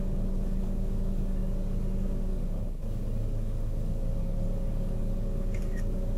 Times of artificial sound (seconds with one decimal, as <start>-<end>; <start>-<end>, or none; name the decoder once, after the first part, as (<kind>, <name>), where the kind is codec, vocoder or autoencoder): 0.0-6.2 (codec, DAC)